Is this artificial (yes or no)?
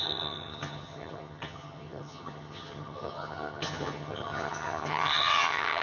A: yes